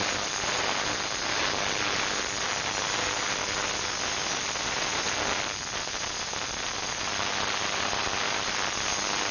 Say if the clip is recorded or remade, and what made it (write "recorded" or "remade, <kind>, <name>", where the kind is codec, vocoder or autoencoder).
recorded